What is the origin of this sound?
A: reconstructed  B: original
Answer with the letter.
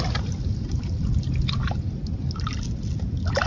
B